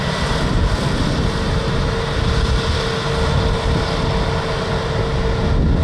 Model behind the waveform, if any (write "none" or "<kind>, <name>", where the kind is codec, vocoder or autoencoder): none